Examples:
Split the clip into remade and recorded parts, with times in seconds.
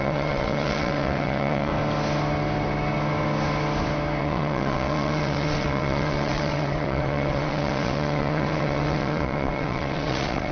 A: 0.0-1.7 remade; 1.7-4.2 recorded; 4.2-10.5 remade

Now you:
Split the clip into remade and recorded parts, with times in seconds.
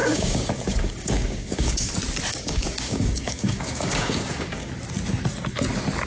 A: 0.0-1.9 remade; 1.9-2.3 recorded; 2.3-4.7 remade; 4.7-6.1 recorded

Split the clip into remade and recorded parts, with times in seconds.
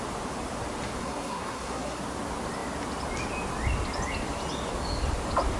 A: 0.0-1.0 recorded; 1.0-2.0 remade; 2.0-5.6 recorded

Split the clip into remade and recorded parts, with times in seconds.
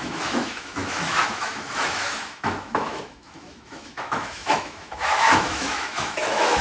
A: 0.0-6.6 remade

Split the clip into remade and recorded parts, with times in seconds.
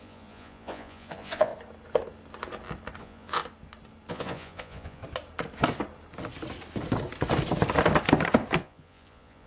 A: 0.0-1.5 remade; 1.5-3.0 recorded; 3.0-3.4 remade; 3.4-4.1 recorded; 4.1-5.0 remade; 5.0-8.6 recorded; 8.6-9.5 remade